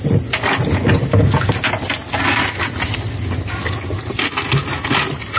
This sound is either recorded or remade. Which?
recorded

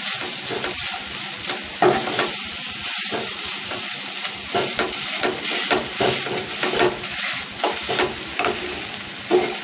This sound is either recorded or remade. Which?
recorded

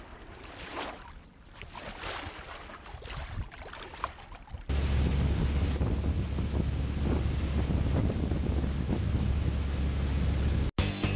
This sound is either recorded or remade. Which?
recorded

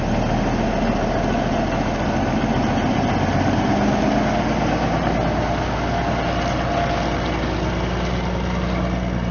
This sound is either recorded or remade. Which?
recorded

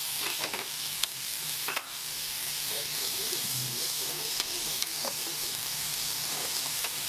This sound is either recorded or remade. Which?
remade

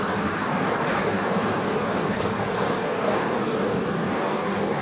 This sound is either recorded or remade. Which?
remade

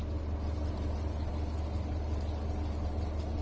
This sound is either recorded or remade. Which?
recorded